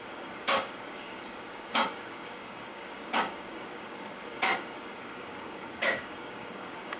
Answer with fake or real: fake